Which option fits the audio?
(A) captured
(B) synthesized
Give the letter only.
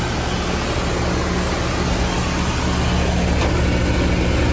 A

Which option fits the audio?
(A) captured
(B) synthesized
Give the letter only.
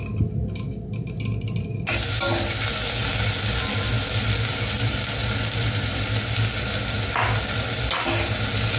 A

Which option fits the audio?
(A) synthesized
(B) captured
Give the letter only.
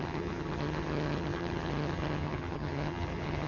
A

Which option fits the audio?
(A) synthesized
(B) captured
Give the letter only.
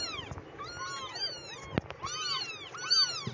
B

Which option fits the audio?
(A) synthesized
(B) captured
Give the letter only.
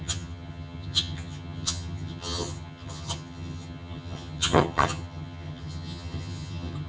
A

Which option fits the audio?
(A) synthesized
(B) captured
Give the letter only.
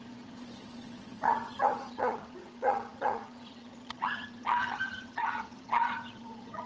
A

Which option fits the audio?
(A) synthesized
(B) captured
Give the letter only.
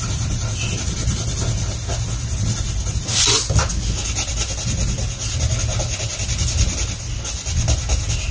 B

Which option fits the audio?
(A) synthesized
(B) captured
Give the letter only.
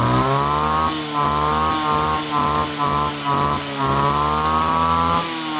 B